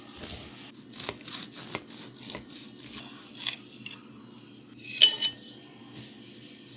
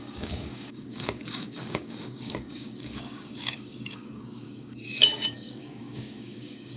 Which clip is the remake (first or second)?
second